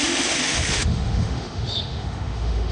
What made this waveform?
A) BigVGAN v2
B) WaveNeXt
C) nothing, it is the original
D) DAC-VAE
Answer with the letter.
D